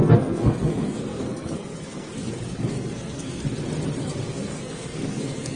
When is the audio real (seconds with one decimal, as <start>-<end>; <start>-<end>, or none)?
3.4-4.0